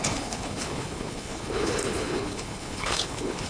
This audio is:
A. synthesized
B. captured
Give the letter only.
A